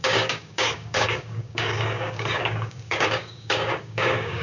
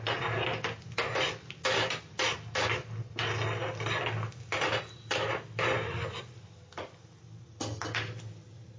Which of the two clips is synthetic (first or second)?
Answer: first